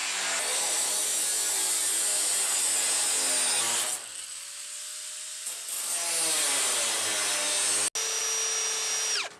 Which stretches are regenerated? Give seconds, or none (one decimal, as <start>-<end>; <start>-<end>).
none